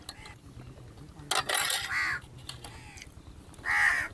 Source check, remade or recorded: recorded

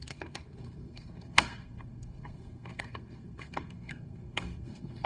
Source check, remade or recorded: remade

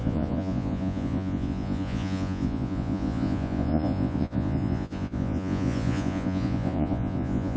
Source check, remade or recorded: remade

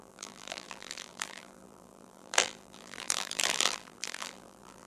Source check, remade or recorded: remade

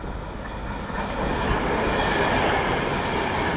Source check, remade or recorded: recorded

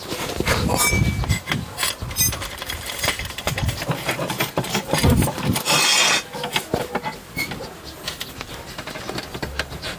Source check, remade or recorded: recorded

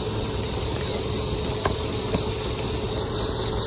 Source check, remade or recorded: recorded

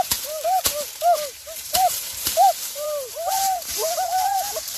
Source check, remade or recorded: remade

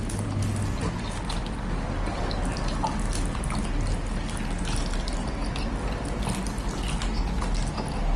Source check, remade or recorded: recorded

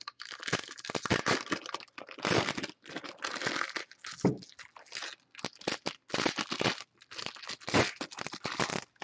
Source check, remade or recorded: recorded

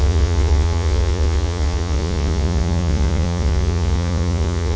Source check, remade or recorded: remade